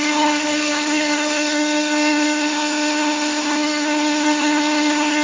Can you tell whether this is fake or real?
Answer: fake